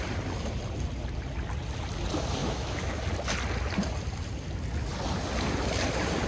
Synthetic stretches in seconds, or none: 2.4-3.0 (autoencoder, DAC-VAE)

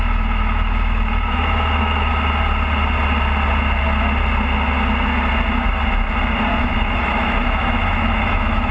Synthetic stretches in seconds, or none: 0.0-2.1 (autoencoder, DAC-VAE); 6.6-8.7